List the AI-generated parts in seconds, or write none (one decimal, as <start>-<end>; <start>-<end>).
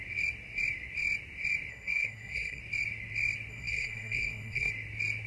1.7-2.6; 3.5-4.7